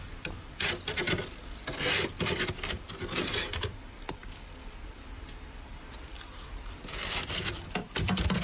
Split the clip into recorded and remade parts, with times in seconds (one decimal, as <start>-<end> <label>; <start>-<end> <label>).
0.0-8.4 remade